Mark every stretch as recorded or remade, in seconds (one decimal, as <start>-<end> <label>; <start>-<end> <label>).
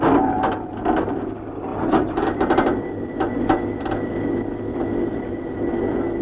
0.0-1.7 recorded; 1.7-2.4 remade; 2.4-6.2 recorded